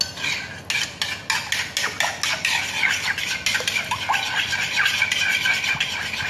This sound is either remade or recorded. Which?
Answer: recorded